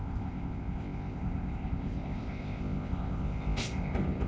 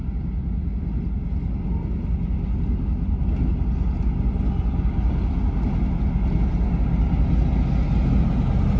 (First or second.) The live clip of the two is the second